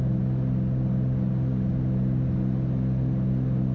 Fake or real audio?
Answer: real